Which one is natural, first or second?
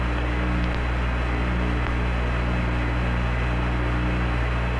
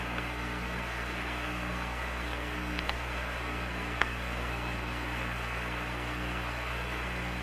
first